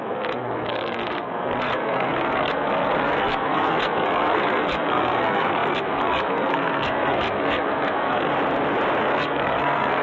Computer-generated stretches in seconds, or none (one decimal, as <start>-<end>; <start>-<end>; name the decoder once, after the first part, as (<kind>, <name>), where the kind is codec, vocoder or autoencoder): 0.0-8.3 (codec, SNAC); 9.0-10.0